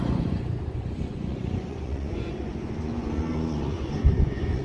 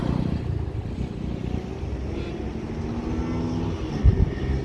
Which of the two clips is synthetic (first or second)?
first